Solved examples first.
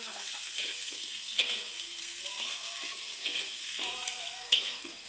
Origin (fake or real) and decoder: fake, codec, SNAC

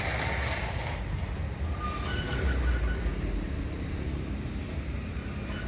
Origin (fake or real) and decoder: real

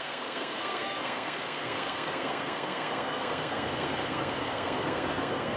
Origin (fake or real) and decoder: fake, codec, SNAC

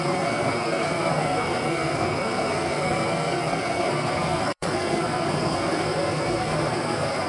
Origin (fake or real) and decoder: fake, codec, SNAC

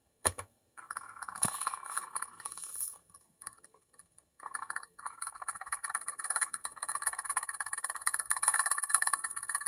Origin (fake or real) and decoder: fake, codec, SNAC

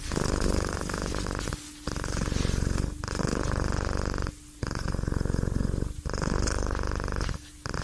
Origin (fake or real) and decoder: real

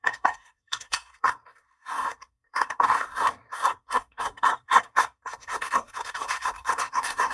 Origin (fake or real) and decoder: fake, codec, SNAC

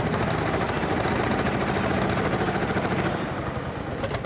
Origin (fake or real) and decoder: real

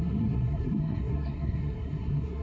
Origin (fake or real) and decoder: fake, codec, SNAC